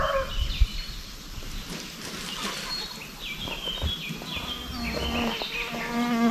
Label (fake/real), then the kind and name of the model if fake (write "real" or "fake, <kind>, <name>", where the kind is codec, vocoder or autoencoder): real